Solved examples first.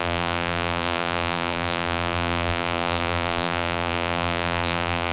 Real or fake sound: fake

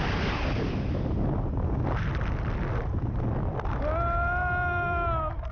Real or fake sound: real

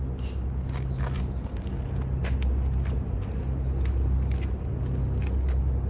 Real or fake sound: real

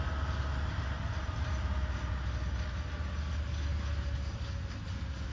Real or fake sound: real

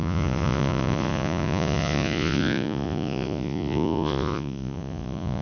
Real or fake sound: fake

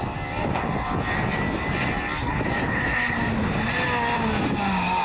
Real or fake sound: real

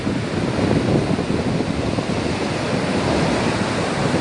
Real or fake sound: real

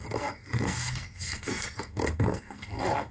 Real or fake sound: fake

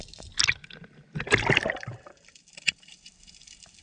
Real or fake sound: real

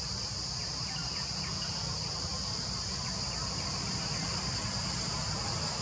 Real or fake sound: real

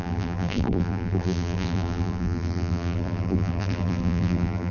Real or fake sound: fake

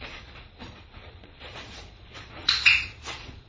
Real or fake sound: fake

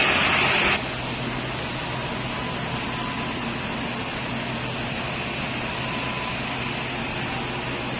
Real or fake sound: real